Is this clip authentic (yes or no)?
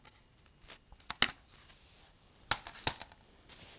yes